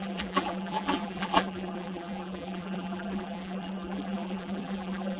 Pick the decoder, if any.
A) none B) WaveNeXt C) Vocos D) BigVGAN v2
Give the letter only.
D